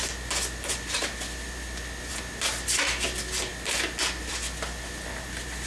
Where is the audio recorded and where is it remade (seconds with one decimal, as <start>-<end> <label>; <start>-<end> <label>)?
0.0-5.7 recorded